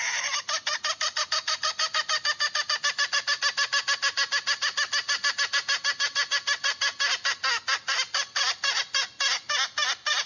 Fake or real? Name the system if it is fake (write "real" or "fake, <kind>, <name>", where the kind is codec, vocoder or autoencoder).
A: real